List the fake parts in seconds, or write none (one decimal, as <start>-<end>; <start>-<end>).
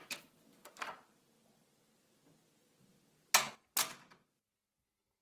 none